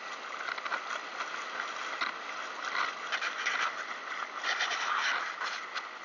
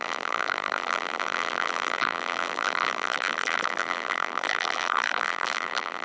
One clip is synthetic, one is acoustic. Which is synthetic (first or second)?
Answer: second